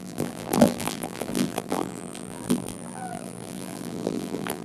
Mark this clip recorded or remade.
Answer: remade